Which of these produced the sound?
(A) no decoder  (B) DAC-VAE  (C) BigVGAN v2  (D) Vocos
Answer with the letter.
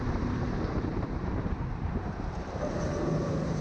C